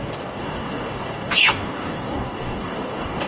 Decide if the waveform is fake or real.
fake